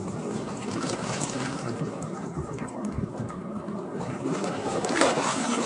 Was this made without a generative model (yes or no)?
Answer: no